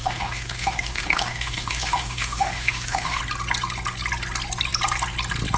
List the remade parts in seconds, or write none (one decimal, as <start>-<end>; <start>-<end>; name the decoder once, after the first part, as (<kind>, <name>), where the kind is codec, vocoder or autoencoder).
0.0-3.2 (autoencoder, DAC-VAE)